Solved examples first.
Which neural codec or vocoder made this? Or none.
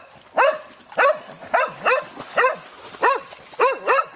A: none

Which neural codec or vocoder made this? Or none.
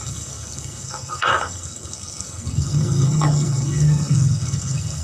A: codec, SNAC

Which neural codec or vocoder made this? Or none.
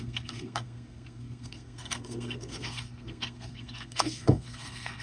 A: codec, SNAC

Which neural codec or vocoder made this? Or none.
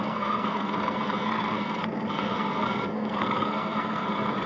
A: codec, SNAC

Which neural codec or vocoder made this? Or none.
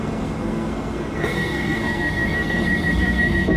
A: codec, SNAC